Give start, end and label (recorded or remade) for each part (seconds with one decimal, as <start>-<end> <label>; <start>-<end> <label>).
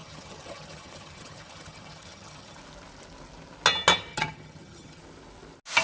0.0-2.6 remade; 2.6-4.1 recorded; 4.1-5.0 remade; 5.0-5.8 recorded